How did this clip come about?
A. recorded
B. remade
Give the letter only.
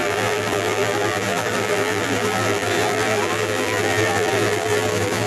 B